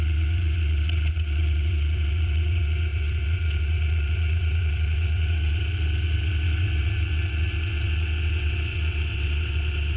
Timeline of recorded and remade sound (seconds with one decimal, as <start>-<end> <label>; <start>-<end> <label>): 0.0-10.0 remade